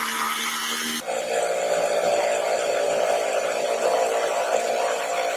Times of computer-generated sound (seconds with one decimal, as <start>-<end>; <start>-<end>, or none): none